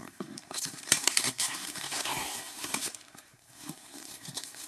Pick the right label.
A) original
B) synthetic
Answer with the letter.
B